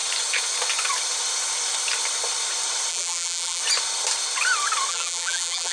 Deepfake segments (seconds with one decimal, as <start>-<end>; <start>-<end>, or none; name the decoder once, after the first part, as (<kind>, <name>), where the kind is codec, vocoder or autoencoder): 2.9-3.6 (vocoder, BigVGAN v2); 4.9-5.7